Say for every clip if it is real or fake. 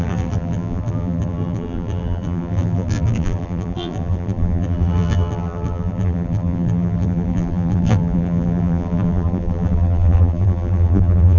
fake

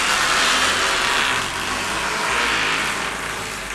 real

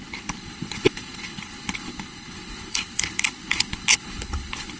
fake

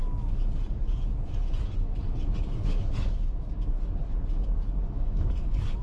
fake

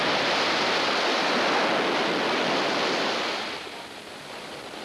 real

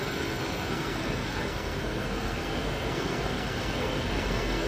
fake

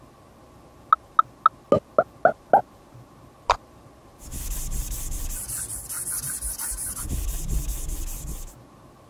real